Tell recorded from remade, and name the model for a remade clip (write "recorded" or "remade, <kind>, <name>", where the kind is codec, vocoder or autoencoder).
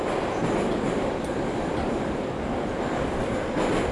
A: remade, vocoder, BigVGAN v2